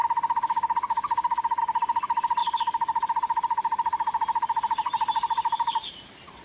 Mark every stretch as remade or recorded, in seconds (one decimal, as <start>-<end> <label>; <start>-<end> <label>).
0.0-2.4 recorded; 2.4-6.4 remade